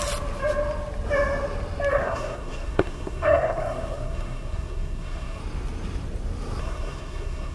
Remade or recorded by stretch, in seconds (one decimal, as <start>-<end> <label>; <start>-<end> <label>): 0.0-1.9 recorded; 1.9-5.4 remade; 5.4-6.6 recorded; 6.6-7.5 remade